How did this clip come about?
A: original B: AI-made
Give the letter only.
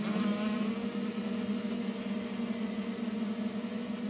A